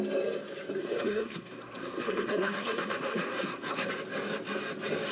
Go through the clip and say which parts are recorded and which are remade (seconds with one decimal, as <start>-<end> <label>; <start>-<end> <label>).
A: 0.0-0.8 recorded; 0.8-3.9 remade; 3.9-5.1 recorded